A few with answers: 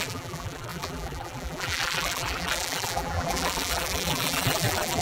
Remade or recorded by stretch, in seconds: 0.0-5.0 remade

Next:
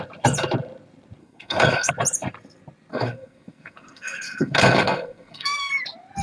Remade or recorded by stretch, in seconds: 0.0-1.2 recorded; 1.2-1.9 remade; 1.9-2.9 recorded; 2.9-5.7 remade; 5.7-6.2 recorded

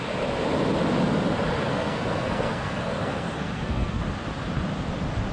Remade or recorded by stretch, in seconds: 0.0-1.6 recorded; 1.6-4.0 remade; 4.0-5.3 recorded